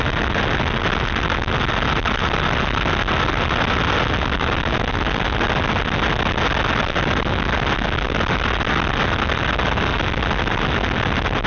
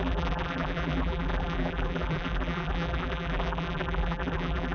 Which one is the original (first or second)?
first